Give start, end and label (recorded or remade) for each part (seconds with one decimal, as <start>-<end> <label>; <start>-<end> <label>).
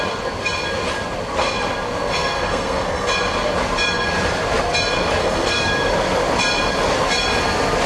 0.0-2.1 recorded; 2.1-3.1 remade; 3.1-5.2 recorded; 5.2-5.7 remade; 5.7-7.9 recorded